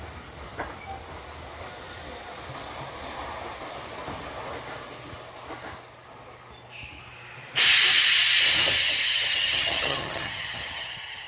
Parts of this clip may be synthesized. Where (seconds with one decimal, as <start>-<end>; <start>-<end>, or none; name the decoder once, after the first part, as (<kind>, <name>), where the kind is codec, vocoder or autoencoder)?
8.8-11.3 (vocoder, HiFi-GAN)

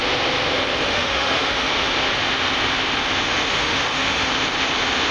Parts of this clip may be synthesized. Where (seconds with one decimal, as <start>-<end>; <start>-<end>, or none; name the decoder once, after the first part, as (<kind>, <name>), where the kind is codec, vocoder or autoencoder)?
0.8-1.7 (autoencoder, DAC-VAE); 3.5-4.3

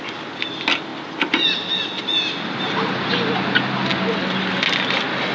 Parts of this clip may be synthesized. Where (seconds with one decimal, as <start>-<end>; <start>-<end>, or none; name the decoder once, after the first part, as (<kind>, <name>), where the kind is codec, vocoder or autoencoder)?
none

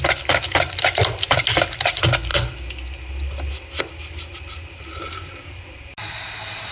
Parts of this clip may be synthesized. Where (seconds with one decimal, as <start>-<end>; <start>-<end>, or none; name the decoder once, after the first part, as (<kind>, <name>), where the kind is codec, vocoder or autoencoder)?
none

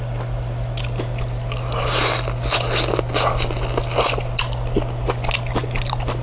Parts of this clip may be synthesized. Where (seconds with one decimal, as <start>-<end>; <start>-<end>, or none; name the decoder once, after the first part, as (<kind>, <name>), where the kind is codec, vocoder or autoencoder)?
5.6-6.2 (vocoder, BigVGAN v2)

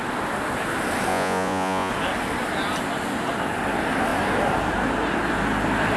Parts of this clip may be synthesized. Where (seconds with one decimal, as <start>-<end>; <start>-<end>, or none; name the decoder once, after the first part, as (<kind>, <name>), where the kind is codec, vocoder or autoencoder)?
1.1-1.9 (vocoder, Vocos)

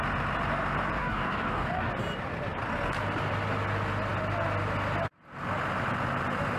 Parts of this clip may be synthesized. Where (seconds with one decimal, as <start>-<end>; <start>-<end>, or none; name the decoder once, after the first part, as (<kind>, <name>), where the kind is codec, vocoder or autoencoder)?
1.0-1.9 (codec, DAC)